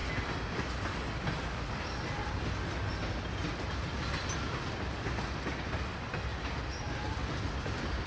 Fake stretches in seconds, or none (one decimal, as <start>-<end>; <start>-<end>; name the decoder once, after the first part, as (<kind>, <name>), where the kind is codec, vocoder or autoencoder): none